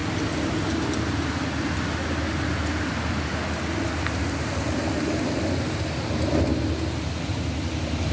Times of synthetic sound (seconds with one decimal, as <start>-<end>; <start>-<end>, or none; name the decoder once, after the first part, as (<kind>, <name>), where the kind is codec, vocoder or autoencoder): none